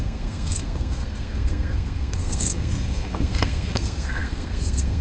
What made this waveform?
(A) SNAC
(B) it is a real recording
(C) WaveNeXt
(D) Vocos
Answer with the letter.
A